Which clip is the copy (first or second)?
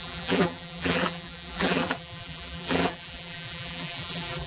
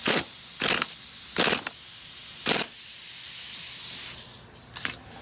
first